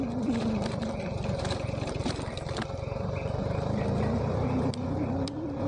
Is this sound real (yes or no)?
yes